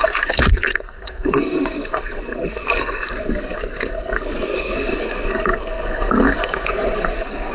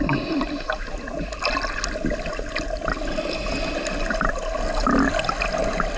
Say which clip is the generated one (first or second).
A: first